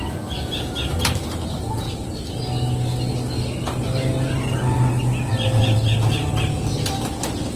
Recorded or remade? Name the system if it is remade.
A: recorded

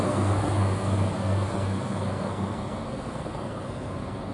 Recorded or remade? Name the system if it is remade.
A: remade, codec, SNAC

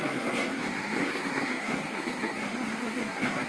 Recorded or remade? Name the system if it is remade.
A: remade, codec, SNAC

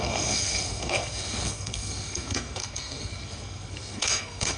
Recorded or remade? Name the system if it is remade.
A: remade, codec, SNAC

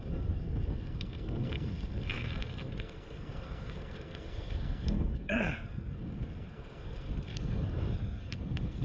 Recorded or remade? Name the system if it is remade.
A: remade, codec, SNAC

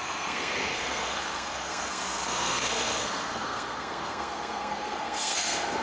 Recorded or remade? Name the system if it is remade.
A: remade, codec, SNAC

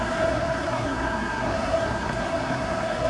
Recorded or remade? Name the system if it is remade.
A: remade, codec, SNAC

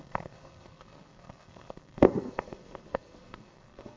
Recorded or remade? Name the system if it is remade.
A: remade, codec, SNAC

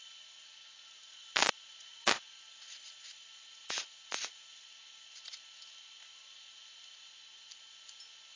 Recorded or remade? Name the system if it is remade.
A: recorded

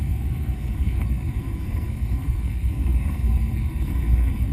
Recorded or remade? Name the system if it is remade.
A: remade, codec, SNAC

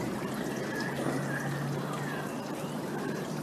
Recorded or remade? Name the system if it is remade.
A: recorded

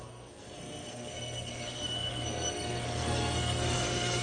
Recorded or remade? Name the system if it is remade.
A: remade, codec, SNAC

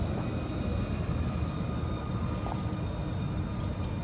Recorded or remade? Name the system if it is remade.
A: recorded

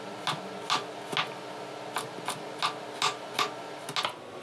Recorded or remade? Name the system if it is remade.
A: recorded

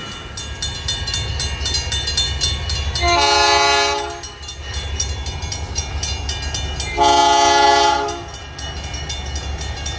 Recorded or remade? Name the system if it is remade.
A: recorded